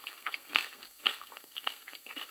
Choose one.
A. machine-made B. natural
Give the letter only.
A